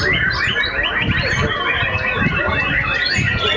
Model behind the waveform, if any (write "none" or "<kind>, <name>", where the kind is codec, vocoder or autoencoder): none